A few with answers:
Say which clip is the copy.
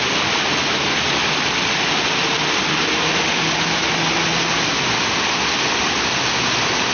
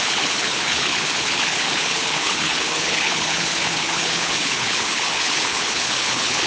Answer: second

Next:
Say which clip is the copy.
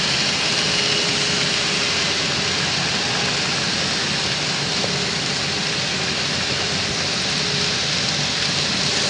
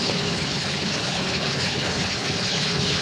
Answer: second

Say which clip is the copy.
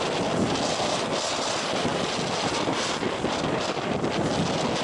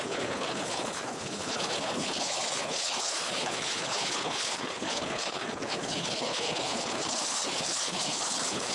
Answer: second